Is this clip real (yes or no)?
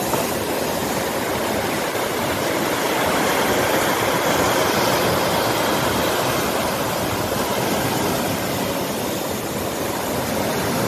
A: yes